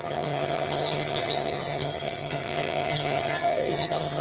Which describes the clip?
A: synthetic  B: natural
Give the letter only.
A